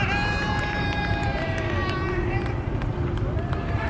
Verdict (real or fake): fake